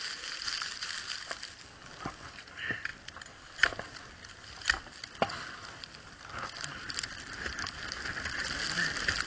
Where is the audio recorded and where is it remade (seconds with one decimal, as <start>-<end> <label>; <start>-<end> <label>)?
0.0-9.3 recorded